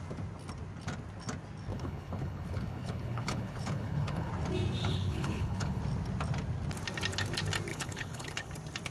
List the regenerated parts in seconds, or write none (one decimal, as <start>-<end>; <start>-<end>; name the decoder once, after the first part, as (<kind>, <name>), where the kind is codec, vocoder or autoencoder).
1.7-4.3 (codec, HILCodec); 4.8-5.8; 7.7-8.5